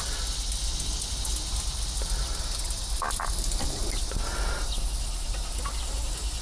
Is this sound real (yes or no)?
yes